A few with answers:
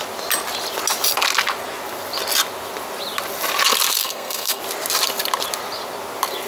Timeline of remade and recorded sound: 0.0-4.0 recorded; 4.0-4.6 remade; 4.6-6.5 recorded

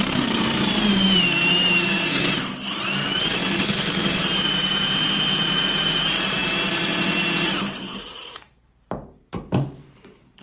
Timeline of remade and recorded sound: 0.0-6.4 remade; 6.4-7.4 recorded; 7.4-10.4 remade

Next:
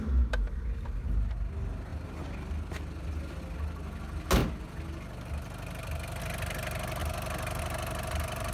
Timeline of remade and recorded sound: 0.0-8.5 recorded

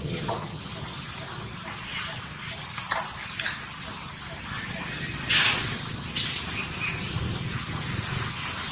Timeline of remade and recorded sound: 0.0-0.7 remade; 0.7-8.7 recorded

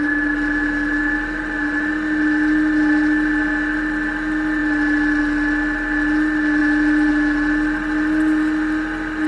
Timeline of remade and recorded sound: 0.0-9.3 recorded

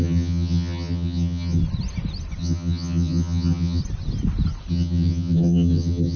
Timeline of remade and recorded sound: 0.0-1.6 remade; 1.6-2.4 recorded; 2.4-3.8 remade; 3.8-4.7 recorded; 4.7-6.2 remade

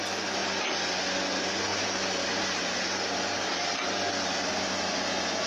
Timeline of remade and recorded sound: 0.0-1.7 recorded; 1.7-4.1 remade; 4.1-5.5 recorded

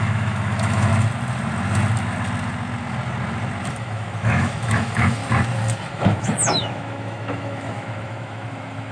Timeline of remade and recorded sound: 0.0-0.9 remade; 0.9-3.7 recorded; 3.7-5.2 remade; 5.2-5.9 recorded; 5.9-8.9 remade